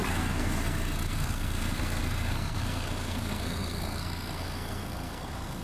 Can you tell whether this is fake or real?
fake